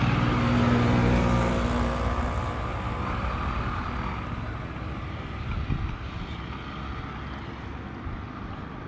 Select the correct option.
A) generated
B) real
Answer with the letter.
B